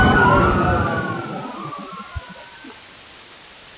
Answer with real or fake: real